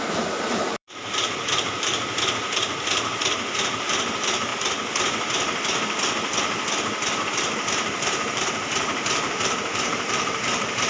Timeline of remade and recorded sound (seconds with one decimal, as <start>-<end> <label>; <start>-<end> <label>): 0.0-1.9 remade; 1.9-3.5 recorded; 3.5-4.5 remade; 4.5-7.3 recorded; 7.3-10.9 remade